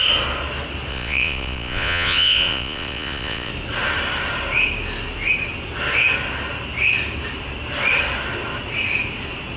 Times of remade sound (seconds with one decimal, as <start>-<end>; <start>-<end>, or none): 0.9-3.5